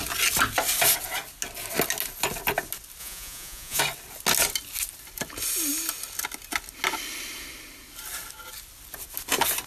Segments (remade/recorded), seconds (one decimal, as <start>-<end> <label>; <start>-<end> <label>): 0.0-3.0 recorded; 3.0-3.8 remade; 3.8-9.7 recorded